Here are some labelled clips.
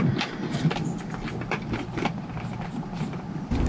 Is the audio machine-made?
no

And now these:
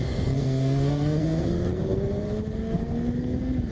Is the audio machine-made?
yes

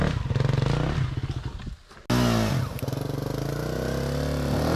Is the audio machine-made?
no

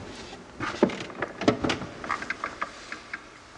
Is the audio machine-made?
no